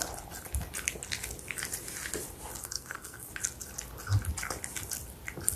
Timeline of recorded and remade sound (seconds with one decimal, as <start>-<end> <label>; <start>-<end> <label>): 0.0-2.6 recorded; 2.6-3.3 remade; 3.3-5.6 recorded